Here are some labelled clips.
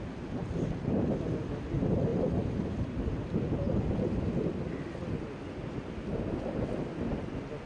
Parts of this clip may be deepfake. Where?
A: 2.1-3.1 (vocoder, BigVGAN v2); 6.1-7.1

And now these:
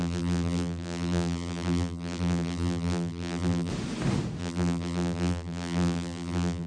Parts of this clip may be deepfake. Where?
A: 0.0-3.7 (vocoder, BigVGAN v2); 4.4-6.7

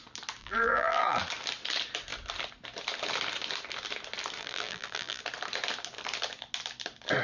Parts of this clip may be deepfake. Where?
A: 0.4-1.2 (vocoder, BigVGAN v2); 4.4-5.2

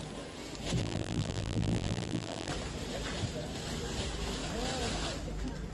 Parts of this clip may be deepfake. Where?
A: 0.8-2.5 (vocoder, BigVGAN v2)